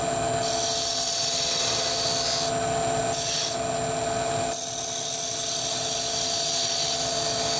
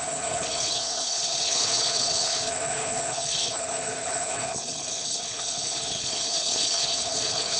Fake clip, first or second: second